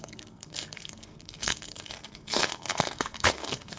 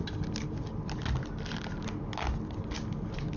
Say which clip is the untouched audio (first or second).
second